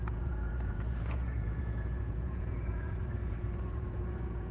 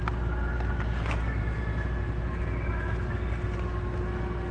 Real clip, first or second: second